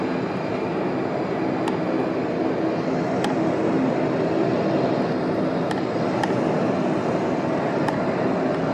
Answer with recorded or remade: recorded